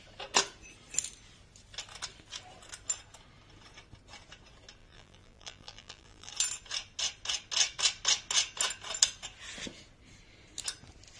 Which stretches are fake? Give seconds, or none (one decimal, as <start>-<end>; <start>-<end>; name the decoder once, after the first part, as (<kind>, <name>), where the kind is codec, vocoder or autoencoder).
4.8-6.3 (vocoder, BigVGAN v2)